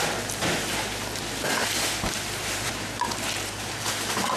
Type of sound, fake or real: real